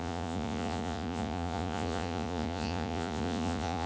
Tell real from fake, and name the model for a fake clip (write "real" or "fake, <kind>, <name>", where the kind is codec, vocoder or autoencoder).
fake, vocoder, Vocos